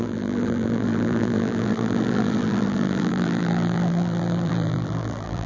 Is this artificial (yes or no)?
yes